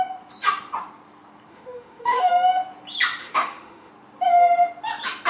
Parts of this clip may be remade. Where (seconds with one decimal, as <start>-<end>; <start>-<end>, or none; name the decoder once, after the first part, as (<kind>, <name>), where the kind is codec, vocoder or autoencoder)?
1.5-2.3 (autoencoder, DAC-VAE); 3.2-3.9